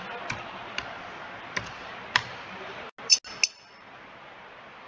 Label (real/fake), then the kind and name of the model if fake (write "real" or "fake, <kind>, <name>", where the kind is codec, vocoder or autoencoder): real